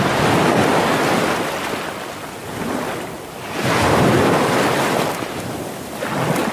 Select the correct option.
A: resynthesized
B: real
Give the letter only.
B